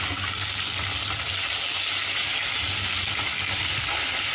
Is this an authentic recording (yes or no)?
yes